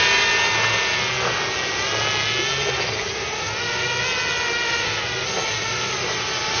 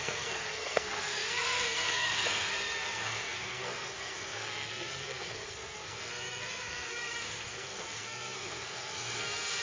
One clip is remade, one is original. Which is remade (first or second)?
second